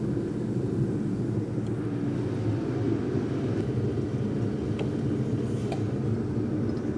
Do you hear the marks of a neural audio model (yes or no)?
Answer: no